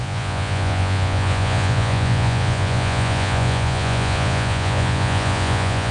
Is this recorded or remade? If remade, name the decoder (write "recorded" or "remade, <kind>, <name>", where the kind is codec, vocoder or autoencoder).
remade, vocoder, Vocos